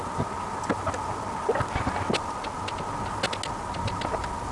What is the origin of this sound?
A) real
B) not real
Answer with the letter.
A